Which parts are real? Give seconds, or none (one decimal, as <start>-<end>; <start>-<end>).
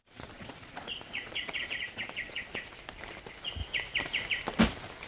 2.7-5.1